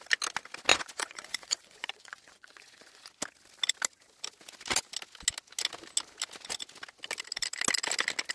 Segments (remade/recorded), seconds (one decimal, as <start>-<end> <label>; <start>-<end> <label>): 0.0-0.7 recorded; 0.7-3.1 remade; 3.1-8.3 recorded